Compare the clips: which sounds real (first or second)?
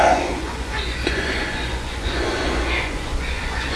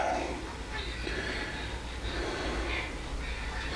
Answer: second